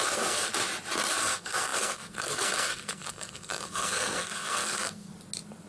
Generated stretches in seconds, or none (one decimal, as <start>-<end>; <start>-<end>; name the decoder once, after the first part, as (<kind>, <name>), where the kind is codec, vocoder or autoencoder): 0.0-0.5 (codec, SNAC); 1.1-5.1